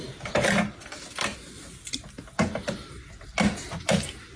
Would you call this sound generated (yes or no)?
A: yes